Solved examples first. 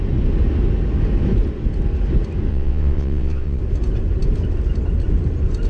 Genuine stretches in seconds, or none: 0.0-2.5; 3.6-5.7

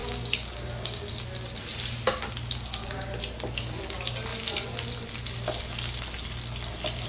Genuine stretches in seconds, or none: 1.1-2.7; 3.2-7.1

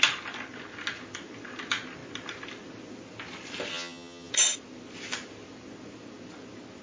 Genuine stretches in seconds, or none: 0.0-3.7; 4.3-6.8

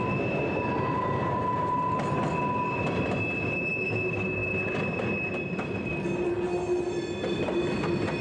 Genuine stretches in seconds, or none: 0.0-8.2